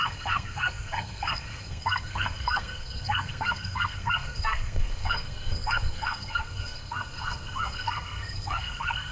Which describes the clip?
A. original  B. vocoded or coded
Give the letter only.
B